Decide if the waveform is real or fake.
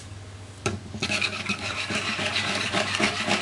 fake